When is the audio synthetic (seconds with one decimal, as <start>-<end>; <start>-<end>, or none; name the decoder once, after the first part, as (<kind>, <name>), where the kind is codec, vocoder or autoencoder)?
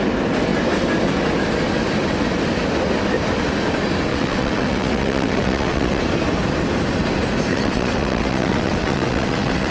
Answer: 4.1-6.0 (vocoder, WaveNeXt); 7.5-9.7